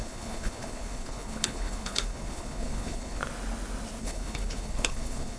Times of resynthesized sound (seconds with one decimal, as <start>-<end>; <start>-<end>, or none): 0.0-3.2; 4.0-5.4

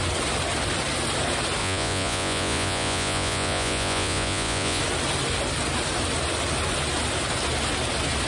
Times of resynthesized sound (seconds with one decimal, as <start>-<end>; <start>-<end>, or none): 1.6-4.8